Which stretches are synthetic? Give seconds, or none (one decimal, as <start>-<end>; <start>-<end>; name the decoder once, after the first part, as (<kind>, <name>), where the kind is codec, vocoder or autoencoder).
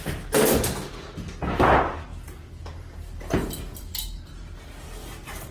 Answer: none